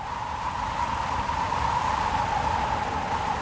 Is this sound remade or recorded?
recorded